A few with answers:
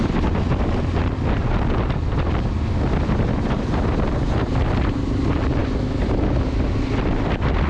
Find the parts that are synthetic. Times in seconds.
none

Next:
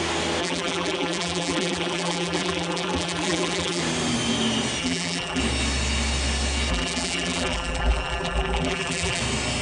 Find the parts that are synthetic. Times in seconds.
0.4-3.8 (vocoder, BigVGAN v2); 4.8-5.4; 6.7-9.2

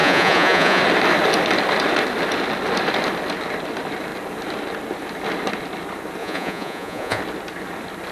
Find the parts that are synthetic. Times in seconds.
0.0-0.8 (vocoder, Vocos); 6.2-7.2